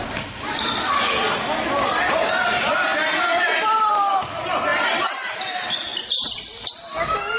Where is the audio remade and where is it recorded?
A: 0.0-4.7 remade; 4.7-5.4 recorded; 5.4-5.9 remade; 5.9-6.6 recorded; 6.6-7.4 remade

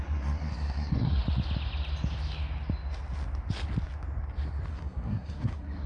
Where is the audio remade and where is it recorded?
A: 0.0-1.2 remade; 1.2-4.7 recorded; 4.7-5.9 remade